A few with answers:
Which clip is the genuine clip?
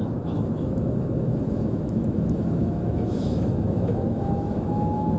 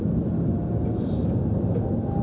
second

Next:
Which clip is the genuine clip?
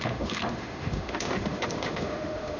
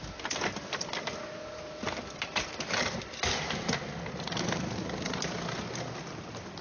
second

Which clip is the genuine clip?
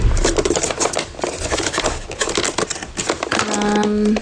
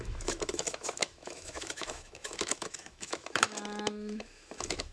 first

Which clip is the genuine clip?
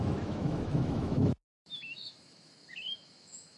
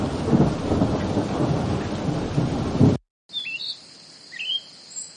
second